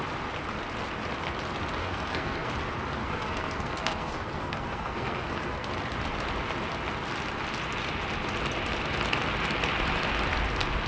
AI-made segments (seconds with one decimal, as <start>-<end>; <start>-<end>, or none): 1.8-2.5; 3.0-5.7